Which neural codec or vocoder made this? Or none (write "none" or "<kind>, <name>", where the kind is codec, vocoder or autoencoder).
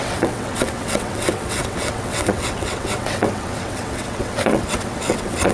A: vocoder, WaveNeXt